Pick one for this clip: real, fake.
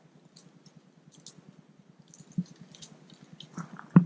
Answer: real